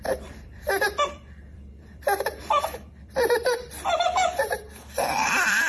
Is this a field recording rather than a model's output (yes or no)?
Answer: no